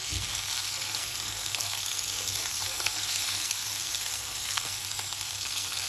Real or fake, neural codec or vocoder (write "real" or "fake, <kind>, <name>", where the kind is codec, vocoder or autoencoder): fake, codec, SNAC